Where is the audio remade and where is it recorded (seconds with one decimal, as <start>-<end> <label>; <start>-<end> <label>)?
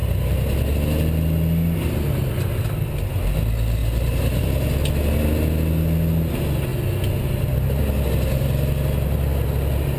0.0-3.8 recorded; 3.8-4.4 remade; 4.4-10.0 recorded